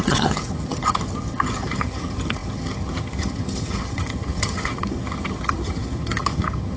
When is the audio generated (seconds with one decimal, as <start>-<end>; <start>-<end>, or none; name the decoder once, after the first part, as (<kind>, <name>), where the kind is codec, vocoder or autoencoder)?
0.0-6.8 (vocoder, HiFi-GAN)